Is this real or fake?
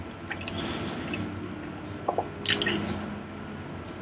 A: real